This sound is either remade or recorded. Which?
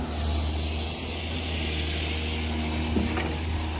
recorded